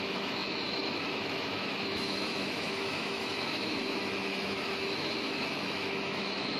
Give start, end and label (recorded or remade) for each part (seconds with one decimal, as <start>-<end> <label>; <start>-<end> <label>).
0.0-6.6 remade